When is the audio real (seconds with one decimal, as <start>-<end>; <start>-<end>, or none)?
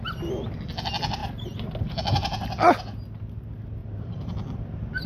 0.0-3.8; 4.6-5.1